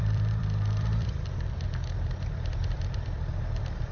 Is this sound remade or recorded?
remade